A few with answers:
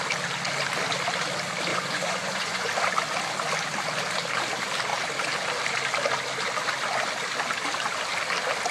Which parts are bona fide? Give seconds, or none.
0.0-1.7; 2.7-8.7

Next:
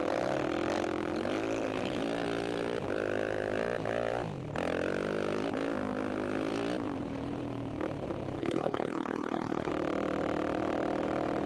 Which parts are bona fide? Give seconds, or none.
0.0-8.4; 9.7-11.5

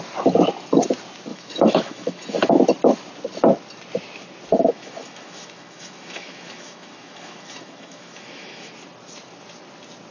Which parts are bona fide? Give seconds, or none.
0.0-1.3; 2.6-4.6; 8.7-10.1